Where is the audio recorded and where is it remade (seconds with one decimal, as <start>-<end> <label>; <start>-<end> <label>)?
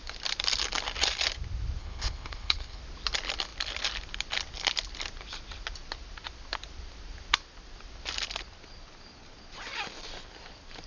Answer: 0.0-1.8 recorded; 1.8-2.8 remade; 2.8-10.9 recorded